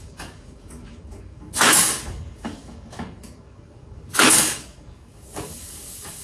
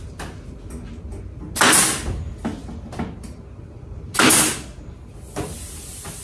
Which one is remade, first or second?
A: first